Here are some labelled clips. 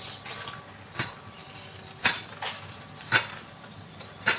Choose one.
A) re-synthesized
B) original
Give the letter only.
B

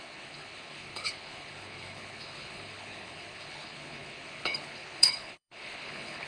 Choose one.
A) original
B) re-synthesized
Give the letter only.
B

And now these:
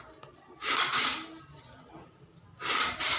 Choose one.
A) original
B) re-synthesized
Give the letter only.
A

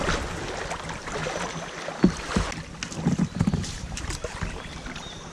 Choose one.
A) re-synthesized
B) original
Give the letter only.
B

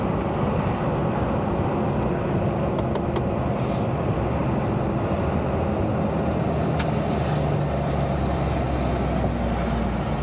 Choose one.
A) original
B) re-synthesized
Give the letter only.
A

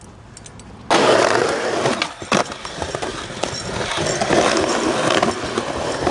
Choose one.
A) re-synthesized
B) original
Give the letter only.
B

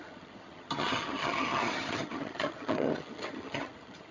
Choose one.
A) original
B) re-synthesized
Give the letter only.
B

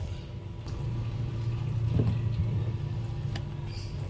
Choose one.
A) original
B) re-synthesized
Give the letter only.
A